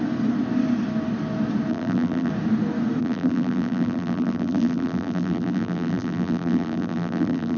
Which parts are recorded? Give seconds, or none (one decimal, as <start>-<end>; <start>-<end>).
0.0-1.7; 2.3-3.0